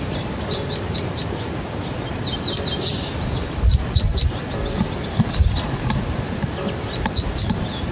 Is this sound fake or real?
real